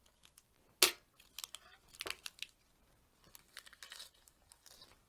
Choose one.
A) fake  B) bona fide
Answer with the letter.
B